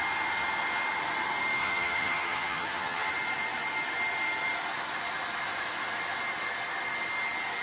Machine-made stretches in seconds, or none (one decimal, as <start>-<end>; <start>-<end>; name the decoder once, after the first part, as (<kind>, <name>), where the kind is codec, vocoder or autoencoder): 1.6-3.1 (vocoder, HiFi-GAN)

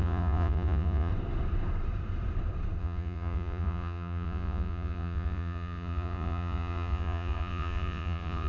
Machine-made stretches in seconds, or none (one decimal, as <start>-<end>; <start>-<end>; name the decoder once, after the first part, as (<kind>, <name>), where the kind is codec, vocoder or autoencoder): 0.0-1.1 (vocoder, Vocos); 2.8-8.5

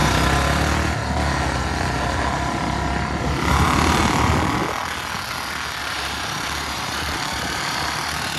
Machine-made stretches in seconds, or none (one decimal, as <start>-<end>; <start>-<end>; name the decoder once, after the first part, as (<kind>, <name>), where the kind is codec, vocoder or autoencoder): 3.2-4.6 (vocoder, BigVGAN v2); 5.8-8.4

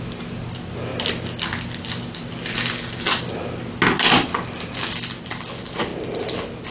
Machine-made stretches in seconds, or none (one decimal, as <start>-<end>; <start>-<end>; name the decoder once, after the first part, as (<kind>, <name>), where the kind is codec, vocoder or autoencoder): none

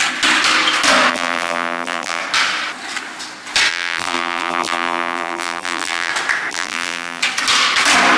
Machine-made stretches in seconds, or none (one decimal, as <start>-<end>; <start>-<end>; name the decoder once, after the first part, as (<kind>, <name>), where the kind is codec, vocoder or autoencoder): 1.1-2.2 (vocoder, BigVGAN v2); 3.7-6.1; 6.5-7.2

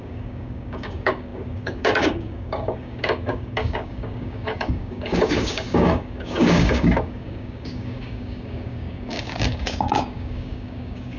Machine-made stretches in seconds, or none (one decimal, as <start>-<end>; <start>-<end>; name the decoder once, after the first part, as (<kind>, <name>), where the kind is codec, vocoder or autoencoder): 0.0-11.2 (codec, DAC)

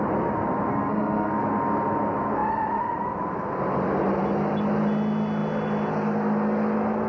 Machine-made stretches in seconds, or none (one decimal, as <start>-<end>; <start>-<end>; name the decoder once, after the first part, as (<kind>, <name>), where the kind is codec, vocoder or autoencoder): 0.7-1.4 (codec, SNAC)